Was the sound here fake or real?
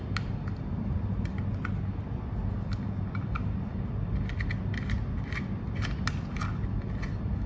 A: real